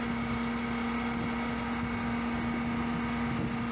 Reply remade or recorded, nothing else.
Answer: recorded